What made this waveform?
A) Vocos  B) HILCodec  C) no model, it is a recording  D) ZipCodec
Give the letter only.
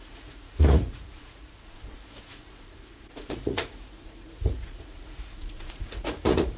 A